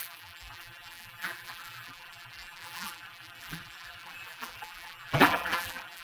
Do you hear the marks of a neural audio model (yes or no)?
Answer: yes